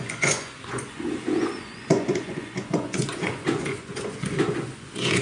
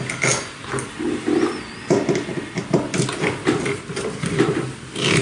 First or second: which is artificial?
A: first